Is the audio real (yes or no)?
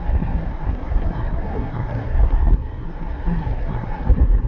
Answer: no